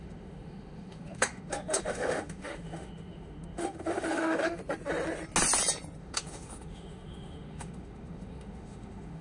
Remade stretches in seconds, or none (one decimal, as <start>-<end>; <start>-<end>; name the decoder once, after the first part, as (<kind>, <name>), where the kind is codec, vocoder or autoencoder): 0.0-4.6 (autoencoder, DAC-VAE); 6.0-9.2